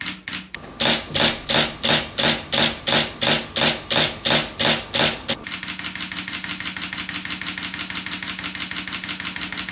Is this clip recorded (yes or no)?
yes